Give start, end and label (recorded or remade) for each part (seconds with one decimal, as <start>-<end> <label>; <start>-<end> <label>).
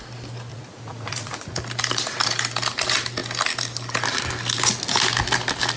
0.0-0.5 recorded; 0.5-1.5 remade; 1.5-5.8 recorded